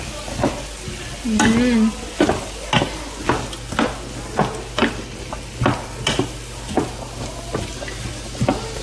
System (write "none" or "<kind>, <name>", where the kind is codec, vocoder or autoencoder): none